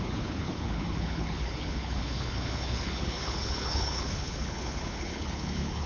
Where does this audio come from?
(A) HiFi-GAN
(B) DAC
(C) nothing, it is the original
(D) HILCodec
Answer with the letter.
D